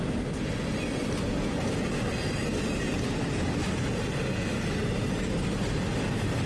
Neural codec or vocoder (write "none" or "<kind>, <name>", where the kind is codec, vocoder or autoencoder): none